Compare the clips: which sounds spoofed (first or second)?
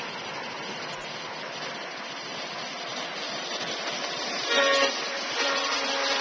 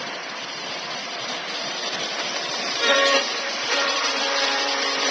second